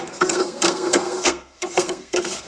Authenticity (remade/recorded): remade